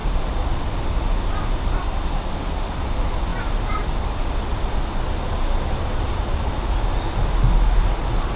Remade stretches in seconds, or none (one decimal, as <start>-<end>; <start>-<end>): none